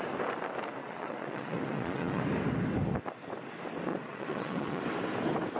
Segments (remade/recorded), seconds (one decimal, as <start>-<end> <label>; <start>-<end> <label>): 0.0-0.8 recorded; 0.8-2.2 remade; 2.2-3.9 recorded; 3.9-4.8 remade; 4.8-5.6 recorded